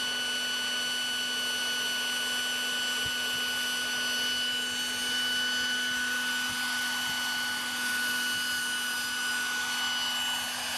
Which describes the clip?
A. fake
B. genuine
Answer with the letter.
B